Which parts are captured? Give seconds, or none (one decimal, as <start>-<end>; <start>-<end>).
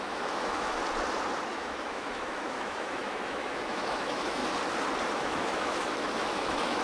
0.8-1.5; 4.4-5.1